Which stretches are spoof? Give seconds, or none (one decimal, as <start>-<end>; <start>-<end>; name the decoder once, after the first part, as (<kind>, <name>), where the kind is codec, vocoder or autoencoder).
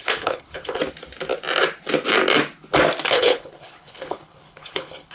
0.0-0.8 (codec, HILCodec); 3.1-5.1